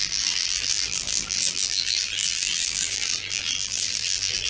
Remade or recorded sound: remade